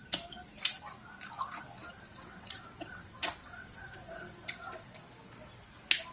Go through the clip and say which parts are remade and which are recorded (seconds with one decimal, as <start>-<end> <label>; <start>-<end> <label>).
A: 0.0-2.1 recorded; 2.1-5.0 remade; 5.0-6.1 recorded